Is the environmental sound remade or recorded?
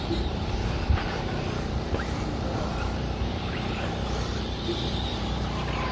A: remade